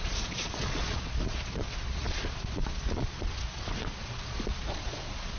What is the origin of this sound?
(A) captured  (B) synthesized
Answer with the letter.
B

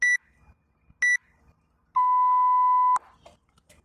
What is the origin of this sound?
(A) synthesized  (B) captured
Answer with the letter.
B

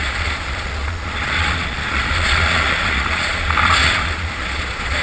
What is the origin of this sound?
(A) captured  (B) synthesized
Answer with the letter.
B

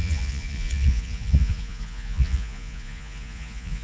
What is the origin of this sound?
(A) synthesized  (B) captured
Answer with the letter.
A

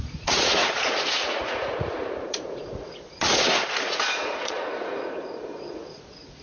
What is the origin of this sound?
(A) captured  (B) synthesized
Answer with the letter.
B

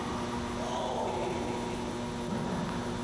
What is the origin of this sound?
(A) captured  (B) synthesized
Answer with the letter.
A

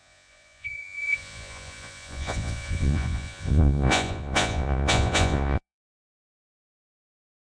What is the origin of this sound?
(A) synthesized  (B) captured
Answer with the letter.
A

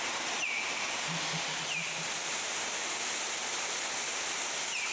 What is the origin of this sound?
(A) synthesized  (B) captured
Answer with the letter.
B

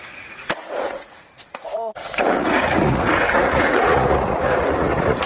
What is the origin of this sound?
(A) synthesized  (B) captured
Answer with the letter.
A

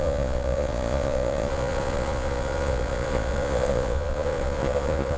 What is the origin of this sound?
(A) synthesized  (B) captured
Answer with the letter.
A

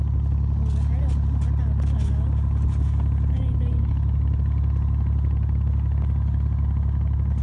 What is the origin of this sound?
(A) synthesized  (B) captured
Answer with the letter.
B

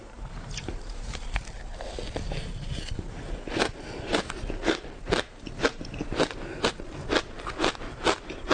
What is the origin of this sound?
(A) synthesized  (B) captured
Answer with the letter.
B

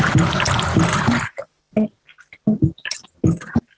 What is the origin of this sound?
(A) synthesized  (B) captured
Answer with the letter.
B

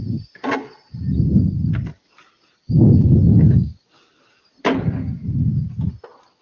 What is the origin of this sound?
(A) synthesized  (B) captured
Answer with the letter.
B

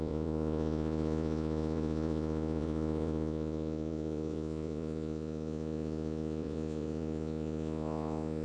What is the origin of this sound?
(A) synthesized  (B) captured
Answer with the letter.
A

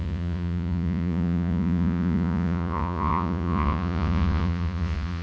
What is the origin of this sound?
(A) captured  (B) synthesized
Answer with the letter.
B